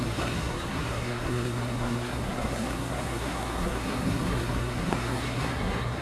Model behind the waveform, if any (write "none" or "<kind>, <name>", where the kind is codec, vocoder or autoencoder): codec, SNAC